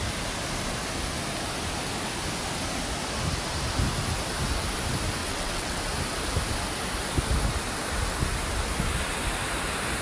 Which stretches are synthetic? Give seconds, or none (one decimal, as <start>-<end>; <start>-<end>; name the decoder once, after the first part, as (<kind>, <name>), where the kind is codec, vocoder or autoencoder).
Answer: 5.2-5.8 (vocoder, WaveNeXt)